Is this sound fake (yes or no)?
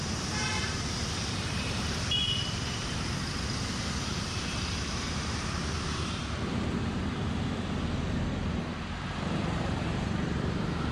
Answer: yes